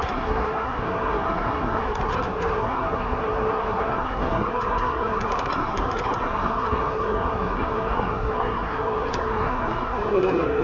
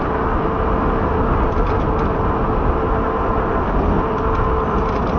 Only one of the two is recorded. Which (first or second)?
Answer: second